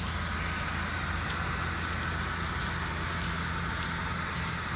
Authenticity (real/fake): real